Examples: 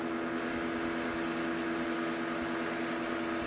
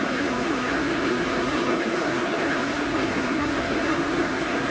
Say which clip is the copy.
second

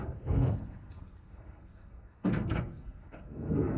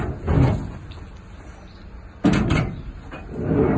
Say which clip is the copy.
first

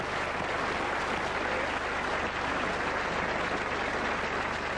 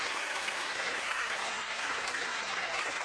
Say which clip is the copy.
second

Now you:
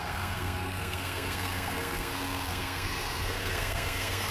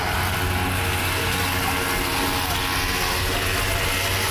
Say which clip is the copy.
first